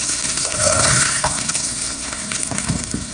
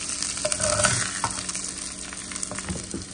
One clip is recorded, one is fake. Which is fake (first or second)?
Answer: first